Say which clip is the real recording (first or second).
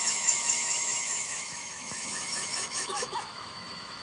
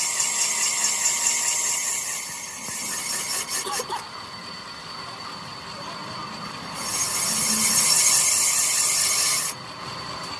second